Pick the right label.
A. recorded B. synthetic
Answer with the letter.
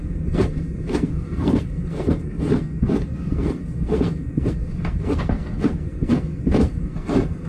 B